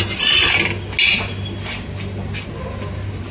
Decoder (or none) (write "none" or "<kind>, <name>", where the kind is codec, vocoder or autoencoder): none